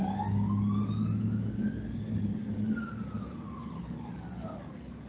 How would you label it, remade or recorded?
recorded